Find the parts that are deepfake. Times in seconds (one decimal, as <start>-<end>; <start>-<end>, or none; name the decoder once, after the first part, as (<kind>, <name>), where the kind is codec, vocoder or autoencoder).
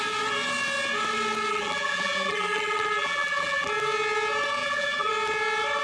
1.5-3.7 (vocoder, BigVGAN v2); 4.6-5.1